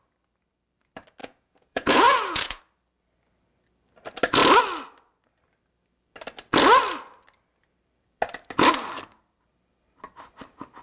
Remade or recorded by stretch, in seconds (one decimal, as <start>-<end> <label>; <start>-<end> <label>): 0.0-1.2 recorded; 1.2-2.6 remade; 2.6-10.8 recorded